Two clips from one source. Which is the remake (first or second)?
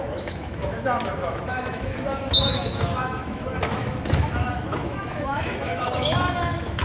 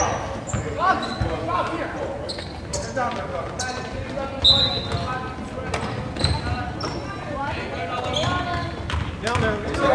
first